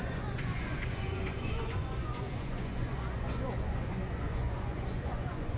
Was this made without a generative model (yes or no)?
no